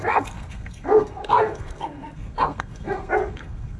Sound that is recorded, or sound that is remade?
remade